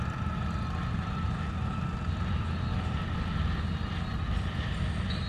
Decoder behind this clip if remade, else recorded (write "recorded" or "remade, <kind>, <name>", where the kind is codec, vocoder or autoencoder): remade, vocoder, BigVGAN v2